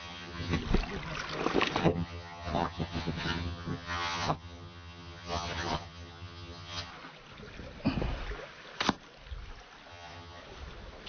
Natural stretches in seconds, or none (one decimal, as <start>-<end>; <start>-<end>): 0.6-1.8; 6.9-9.9; 10.4-11.1